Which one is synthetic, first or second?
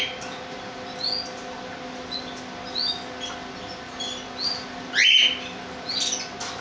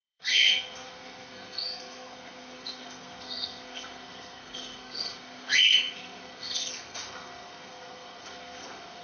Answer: second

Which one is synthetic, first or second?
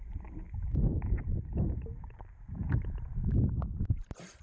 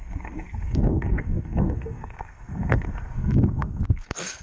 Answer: second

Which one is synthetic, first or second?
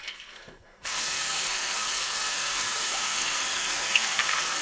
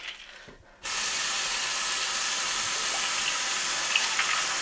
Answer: first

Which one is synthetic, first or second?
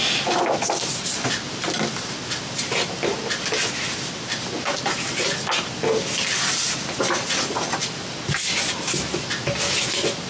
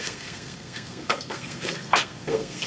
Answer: second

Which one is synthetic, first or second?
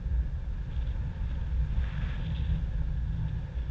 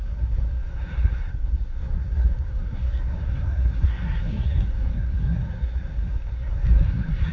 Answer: second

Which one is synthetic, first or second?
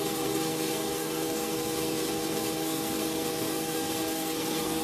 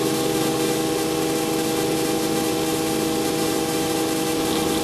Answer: first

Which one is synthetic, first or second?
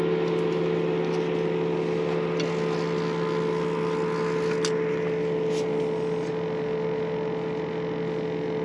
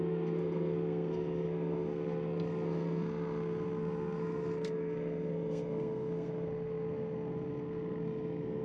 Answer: second